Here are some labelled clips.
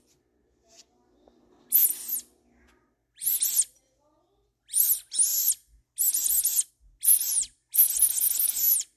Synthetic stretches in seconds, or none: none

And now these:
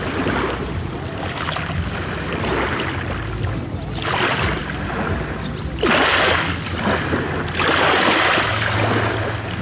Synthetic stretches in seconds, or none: none

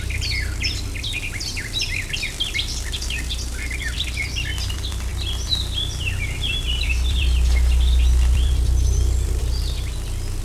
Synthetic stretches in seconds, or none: 0.0-10.4

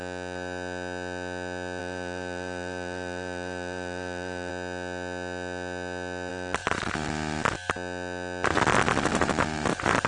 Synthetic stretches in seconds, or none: 1.8-4.5; 6.3-7.1; 9.1-10.1